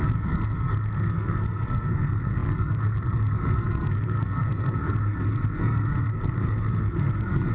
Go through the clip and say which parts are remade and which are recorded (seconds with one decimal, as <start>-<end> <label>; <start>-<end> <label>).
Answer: 0.0-7.5 remade